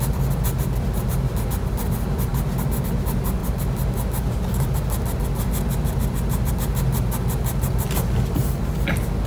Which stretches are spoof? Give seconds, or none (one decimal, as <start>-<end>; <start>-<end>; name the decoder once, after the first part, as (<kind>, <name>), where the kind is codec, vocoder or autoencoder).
none